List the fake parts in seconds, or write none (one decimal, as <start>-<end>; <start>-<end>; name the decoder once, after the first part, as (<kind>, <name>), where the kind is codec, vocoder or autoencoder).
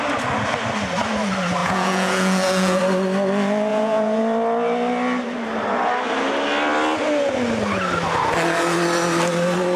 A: 1.6-2.8 (vocoder, Vocos); 3.7-4.2